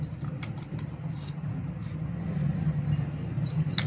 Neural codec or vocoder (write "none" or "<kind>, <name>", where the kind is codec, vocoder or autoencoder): none